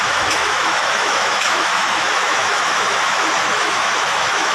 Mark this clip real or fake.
fake